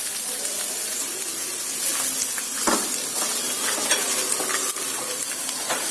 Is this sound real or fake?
real